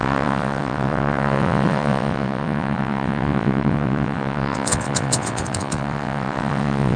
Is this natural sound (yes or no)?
no